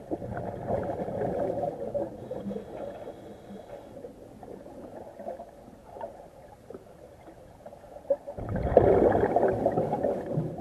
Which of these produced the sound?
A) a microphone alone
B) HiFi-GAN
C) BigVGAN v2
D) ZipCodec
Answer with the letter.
A